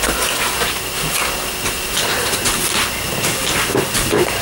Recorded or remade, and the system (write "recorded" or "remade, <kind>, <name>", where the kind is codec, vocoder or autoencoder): recorded